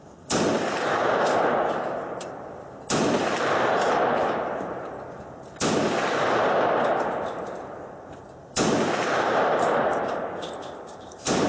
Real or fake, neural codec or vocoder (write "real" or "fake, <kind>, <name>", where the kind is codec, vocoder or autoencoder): fake, vocoder, BigVGAN v2